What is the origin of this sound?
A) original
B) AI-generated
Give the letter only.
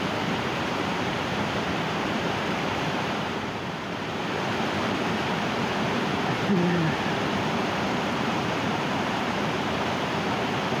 B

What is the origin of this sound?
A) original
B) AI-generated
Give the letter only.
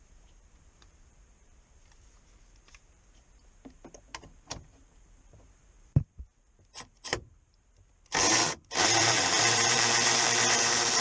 B